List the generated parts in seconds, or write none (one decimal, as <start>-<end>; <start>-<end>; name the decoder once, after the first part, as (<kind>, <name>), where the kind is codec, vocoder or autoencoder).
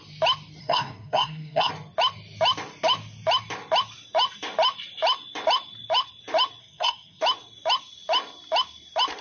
0.6-1.7 (codec, SNAC); 6.6-7.2